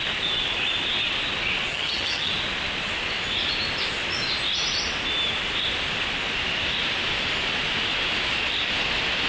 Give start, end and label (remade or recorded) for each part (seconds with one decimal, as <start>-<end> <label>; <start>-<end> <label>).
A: 0.0-1.7 recorded; 1.7-2.3 remade; 2.3-9.3 recorded